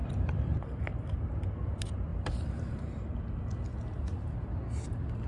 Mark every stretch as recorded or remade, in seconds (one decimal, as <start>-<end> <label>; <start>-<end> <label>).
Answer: 0.0-0.8 remade; 0.8-2.1 recorded; 2.1-3.2 remade; 3.2-5.3 recorded